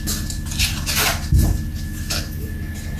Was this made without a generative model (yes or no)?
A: yes